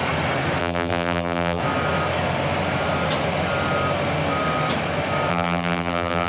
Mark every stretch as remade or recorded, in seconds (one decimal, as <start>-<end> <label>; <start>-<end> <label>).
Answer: 0.0-0.6 recorded; 0.6-1.6 remade; 1.6-5.3 recorded; 5.3-6.3 remade